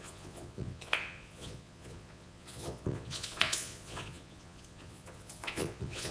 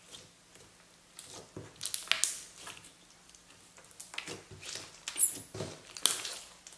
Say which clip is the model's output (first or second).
first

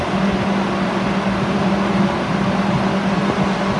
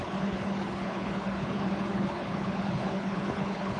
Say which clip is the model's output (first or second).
second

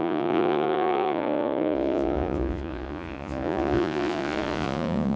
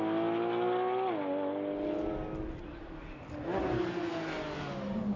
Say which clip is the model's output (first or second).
first